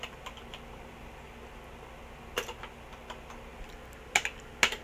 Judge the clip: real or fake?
real